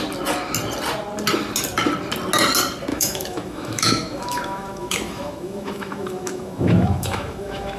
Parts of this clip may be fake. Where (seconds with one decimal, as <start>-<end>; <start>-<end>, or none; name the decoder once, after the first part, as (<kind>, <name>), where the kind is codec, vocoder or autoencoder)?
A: 2.9-7.8 (autoencoder, DAC-VAE)